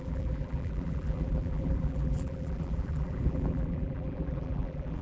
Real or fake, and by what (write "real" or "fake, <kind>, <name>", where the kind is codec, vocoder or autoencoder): fake, vocoder, BigVGAN v2